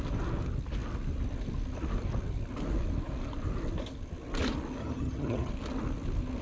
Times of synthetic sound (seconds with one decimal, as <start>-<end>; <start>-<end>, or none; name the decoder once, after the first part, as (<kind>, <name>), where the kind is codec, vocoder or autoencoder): 4.8-5.5 (vocoder, HiFi-GAN)